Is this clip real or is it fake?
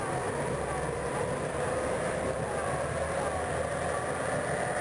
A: real